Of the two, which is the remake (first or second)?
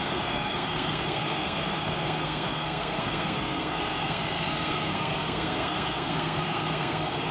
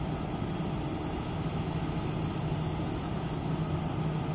first